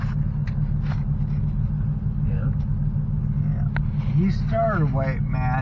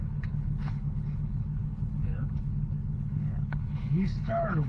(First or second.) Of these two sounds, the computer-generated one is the second